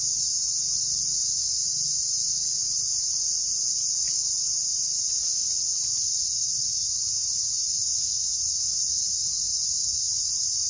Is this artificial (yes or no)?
no